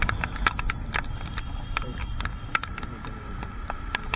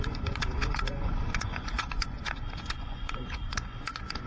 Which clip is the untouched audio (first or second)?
first